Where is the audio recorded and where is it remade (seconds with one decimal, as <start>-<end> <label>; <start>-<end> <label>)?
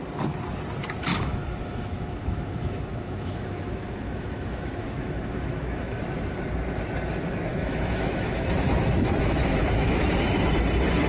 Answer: 0.0-1.1 recorded; 1.1-6.0 remade; 6.0-7.5 recorded; 7.5-10.5 remade; 10.5-11.1 recorded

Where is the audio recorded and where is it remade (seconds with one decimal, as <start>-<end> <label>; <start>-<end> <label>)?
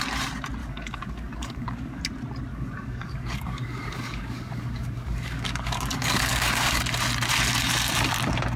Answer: 0.0-0.6 recorded; 0.6-2.0 remade; 2.0-2.5 recorded; 2.5-6.8 remade; 6.8-8.6 recorded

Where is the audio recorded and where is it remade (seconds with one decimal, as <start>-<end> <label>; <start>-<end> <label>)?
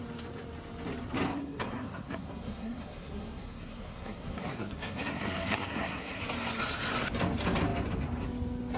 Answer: 0.0-1.3 recorded; 1.3-6.2 remade; 6.2-8.8 recorded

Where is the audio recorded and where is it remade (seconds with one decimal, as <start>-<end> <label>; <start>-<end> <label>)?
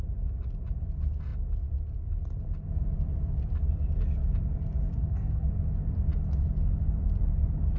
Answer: 0.0-5.0 recorded; 5.0-5.5 remade; 5.5-7.8 recorded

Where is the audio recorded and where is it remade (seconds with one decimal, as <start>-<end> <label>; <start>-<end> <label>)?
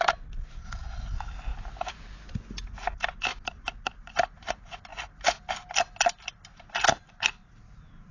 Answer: 0.0-1.5 recorded; 1.5-2.1 remade; 2.1-3.3 recorded; 3.3-4.5 remade; 4.5-8.1 recorded